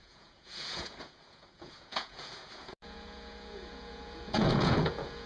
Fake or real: fake